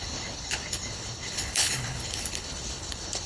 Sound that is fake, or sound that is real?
fake